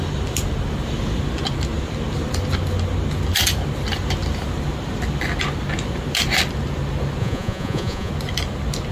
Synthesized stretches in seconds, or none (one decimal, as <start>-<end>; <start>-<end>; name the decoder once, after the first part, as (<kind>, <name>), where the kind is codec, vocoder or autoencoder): 7.2-8.1 (vocoder, Vocos)